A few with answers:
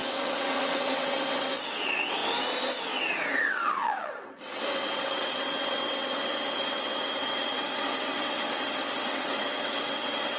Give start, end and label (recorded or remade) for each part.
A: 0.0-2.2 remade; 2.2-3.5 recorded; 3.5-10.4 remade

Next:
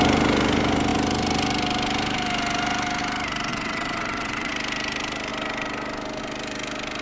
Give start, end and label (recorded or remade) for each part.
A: 0.0-3.5 recorded; 3.5-4.5 remade; 4.5-7.0 recorded

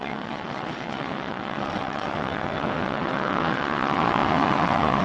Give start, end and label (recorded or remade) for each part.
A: 0.0-5.0 remade